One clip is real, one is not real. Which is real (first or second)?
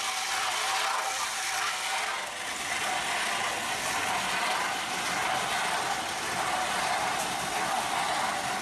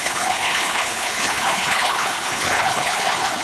first